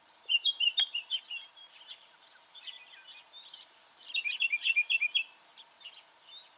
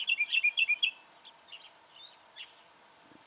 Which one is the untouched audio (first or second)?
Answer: second